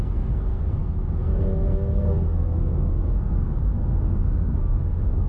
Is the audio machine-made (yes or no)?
yes